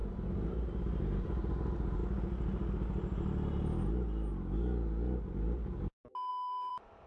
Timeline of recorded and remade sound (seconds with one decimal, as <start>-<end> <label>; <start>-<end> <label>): 0.0-2.0 remade; 2.0-6.3 recorded; 6.3-7.1 remade